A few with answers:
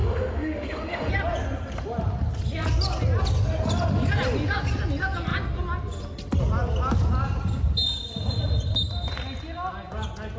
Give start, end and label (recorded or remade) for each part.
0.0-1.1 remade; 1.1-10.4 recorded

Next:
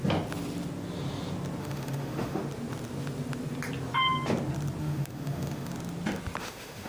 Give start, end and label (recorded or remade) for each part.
0.0-1.6 recorded; 1.6-2.4 remade; 2.4-4.8 recorded; 4.8-5.7 remade; 5.7-6.4 recorded; 6.4-6.9 remade

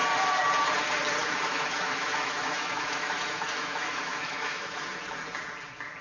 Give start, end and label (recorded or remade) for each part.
0.0-1.2 recorded; 1.2-4.8 remade; 4.8-6.0 recorded

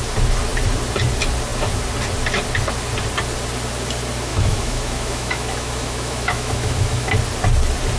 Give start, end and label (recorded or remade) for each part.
0.0-4.3 recorded; 4.3-7.1 remade; 7.1-8.0 recorded